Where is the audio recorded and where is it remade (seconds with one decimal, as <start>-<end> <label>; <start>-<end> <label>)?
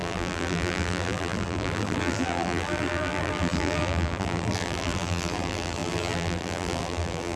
0.0-7.4 remade